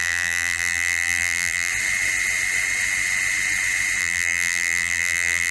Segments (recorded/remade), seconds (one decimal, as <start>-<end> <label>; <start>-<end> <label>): 0.0-1.7 remade; 1.7-4.0 recorded; 4.0-5.5 remade